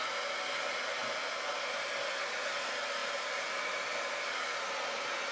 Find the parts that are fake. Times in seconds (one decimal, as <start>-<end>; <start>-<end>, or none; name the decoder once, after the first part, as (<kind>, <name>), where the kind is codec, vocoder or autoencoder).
none